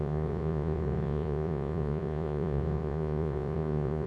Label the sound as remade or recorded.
remade